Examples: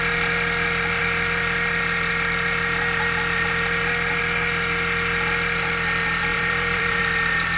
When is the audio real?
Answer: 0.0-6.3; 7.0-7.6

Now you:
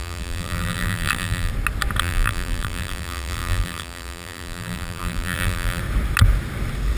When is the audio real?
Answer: 1.5-2.0; 5.8-7.0

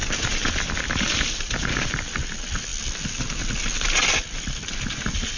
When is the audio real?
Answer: 0.0-5.4

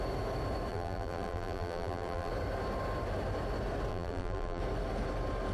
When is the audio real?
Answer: 0.0-0.7; 2.3-3.9; 4.6-5.5

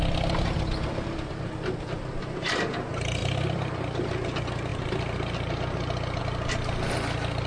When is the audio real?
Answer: 0.0-4.7; 6.2-7.5

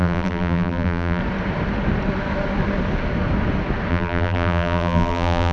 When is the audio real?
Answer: 1.2-3.9

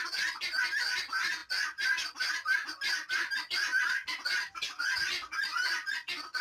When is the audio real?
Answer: 0.0-6.4

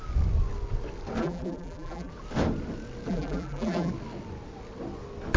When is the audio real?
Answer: 0.0-1.2; 2.1-3.1; 3.9-5.4